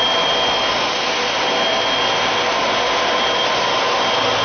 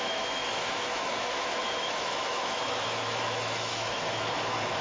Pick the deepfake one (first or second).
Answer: second